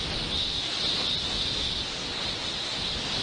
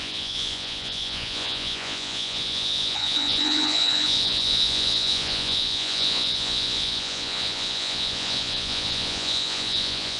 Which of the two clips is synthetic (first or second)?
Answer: second